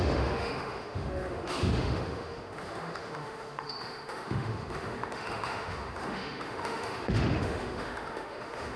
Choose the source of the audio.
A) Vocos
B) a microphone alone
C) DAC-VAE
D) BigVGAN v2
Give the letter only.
C